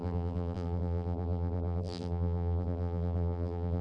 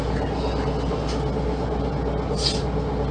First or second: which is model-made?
first